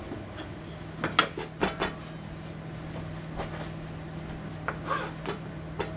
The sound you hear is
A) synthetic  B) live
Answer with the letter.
B